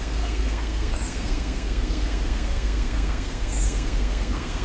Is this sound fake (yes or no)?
yes